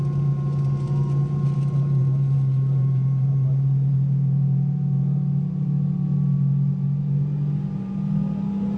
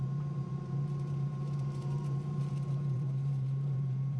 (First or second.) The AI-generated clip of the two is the second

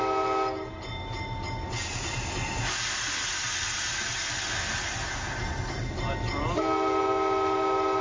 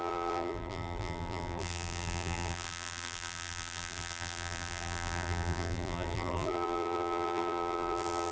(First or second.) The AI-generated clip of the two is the second